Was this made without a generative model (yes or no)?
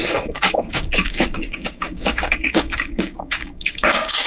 no